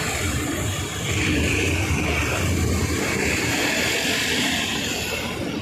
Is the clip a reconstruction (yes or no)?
yes